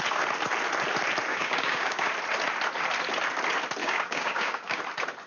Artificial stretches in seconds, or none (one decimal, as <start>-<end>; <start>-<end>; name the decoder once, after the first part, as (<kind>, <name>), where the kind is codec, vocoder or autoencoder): 1.3-2.1 (codec, DAC); 3.8-4.8